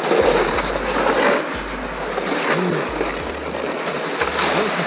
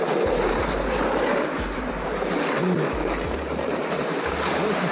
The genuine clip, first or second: first